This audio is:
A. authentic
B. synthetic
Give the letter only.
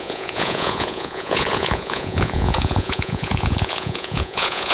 B